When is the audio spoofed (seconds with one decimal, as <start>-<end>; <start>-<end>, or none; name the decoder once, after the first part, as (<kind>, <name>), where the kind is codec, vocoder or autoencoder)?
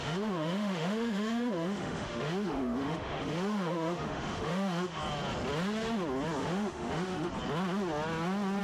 0.0-5.0 (autoencoder, DAC-VAE); 6.4-7.3